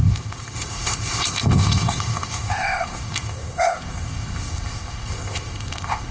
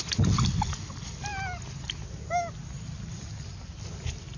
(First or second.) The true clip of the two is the second